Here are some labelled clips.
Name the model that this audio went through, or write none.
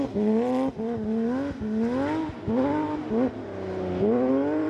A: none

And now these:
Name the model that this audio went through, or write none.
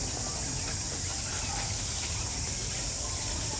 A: none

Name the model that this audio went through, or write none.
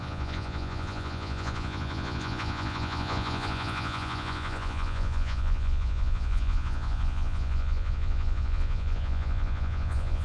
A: vocoder, Vocos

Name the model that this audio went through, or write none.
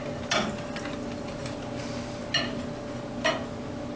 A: none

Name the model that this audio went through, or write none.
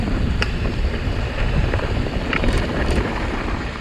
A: vocoder, BigVGAN v2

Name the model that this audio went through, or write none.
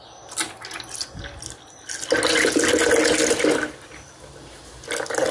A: none